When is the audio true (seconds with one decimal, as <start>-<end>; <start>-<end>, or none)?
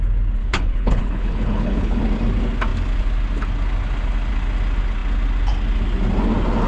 0.0-0.4; 2.0-6.7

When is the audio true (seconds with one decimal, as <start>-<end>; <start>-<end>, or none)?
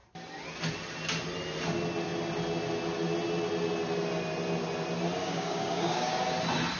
0.0-5.2; 6.2-6.8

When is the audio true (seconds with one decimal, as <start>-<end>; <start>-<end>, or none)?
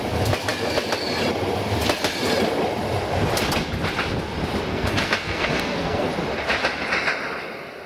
0.0-4.7; 6.1-7.9